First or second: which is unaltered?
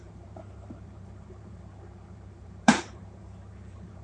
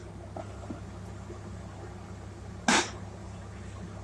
second